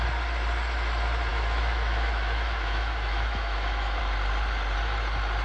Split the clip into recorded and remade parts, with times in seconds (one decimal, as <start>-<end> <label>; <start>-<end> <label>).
0.0-1.3 recorded; 1.3-4.0 remade; 4.0-5.4 recorded